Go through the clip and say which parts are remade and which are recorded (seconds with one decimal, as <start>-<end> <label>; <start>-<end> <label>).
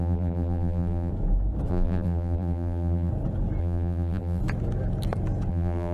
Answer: 0.0-1.1 remade; 1.1-1.7 recorded; 1.7-3.1 remade; 3.1-3.6 recorded; 3.6-4.4 remade; 4.4-5.5 recorded; 5.5-5.9 remade